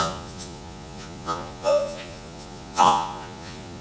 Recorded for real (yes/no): no